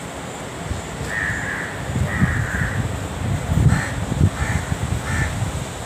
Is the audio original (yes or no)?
yes